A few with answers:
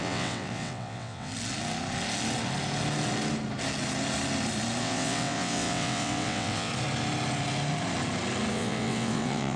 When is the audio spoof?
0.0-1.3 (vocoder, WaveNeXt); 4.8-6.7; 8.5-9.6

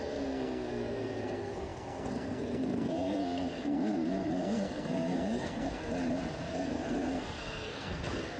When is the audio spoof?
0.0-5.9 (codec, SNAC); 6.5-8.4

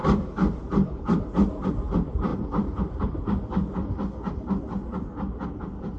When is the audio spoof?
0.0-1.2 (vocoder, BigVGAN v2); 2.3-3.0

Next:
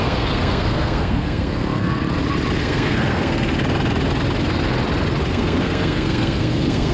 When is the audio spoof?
0.0-2.0 (codec, SNAC); 2.6-3.6; 5.3-6.9

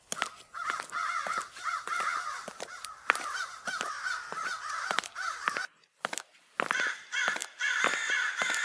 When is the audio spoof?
none

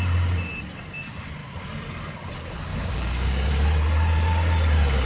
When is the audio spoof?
2.7-3.5 (codec, DAC)

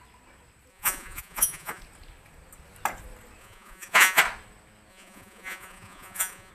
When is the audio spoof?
0.7-1.8 (vocoder, Vocos); 3.4-4.2; 4.9-6.5